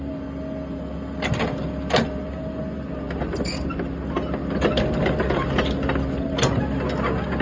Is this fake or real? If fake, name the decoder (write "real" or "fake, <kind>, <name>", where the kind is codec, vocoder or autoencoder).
real